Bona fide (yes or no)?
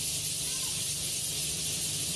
yes